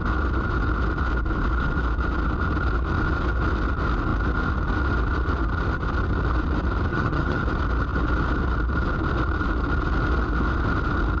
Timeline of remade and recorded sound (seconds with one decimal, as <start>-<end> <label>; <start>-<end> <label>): 0.0-6.9 recorded; 6.9-7.4 remade; 7.4-11.2 recorded